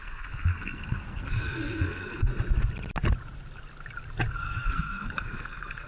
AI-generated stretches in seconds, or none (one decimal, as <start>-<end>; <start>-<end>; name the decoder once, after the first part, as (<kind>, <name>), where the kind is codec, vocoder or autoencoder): 0.0-2.3 (codec, SNAC); 4.3-5.9